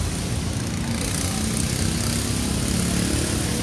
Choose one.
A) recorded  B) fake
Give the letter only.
A